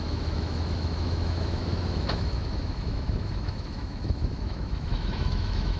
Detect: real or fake fake